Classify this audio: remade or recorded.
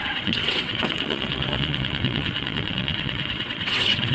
remade